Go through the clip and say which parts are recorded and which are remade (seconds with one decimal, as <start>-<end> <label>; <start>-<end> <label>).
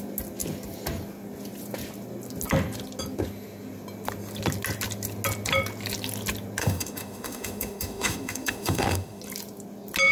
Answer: 0.0-6.6 recorded; 6.6-9.2 remade; 9.2-10.1 recorded